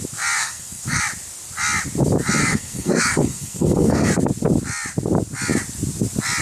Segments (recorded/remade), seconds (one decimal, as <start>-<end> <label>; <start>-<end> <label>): 0.0-0.4 recorded; 0.4-1.0 remade; 1.0-2.4 recorded; 2.4-4.1 remade; 4.1-6.4 recorded